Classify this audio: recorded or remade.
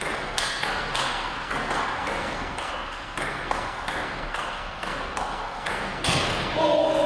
remade